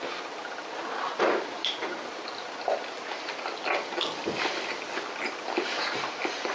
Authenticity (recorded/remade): recorded